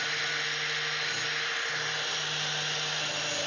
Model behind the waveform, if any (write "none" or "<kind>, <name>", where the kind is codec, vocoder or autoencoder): none